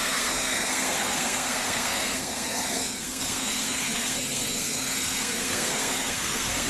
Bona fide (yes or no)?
no